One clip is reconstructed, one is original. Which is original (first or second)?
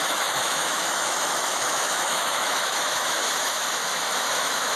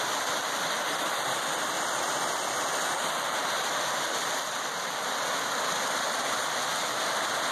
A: second